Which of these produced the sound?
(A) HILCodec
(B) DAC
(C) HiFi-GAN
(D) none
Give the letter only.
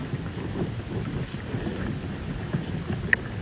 D